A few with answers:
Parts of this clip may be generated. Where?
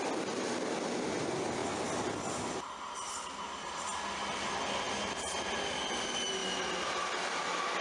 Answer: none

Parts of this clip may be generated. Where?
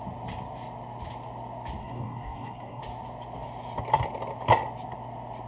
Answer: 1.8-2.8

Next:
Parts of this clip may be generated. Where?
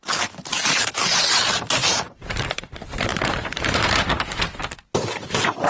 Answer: 0.5-1.2; 1.8-2.7; 3.1-3.9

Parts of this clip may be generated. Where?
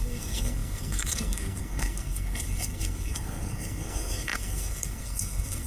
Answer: 0.0-5.7